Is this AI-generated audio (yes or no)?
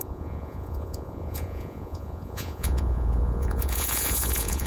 yes